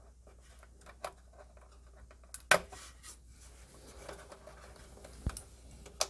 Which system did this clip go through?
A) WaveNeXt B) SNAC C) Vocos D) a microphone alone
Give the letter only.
D